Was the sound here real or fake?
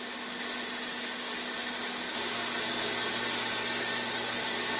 real